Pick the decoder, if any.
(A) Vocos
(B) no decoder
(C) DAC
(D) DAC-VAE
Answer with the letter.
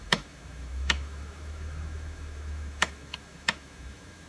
D